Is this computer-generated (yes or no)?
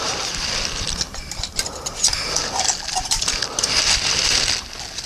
yes